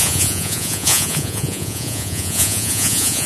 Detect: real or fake fake